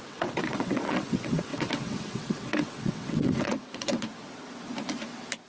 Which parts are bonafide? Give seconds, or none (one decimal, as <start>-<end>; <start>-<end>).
4.1-5.5